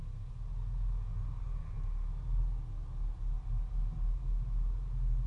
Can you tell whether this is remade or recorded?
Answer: recorded